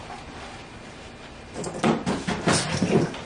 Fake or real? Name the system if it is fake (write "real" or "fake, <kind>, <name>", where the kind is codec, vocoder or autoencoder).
real